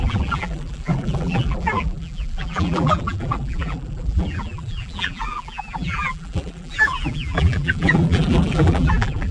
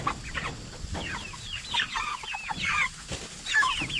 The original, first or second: second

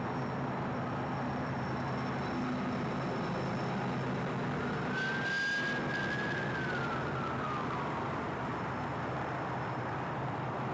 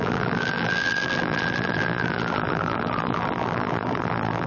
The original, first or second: first